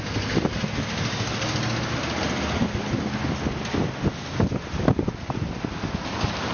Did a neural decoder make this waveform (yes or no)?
no